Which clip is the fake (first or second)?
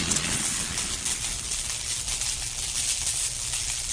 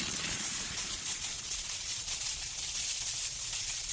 second